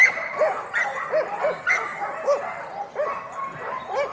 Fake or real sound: real